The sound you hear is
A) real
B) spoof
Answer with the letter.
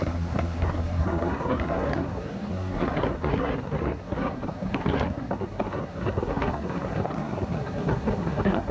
B